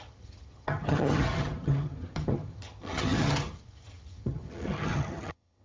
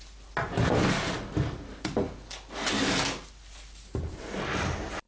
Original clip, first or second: second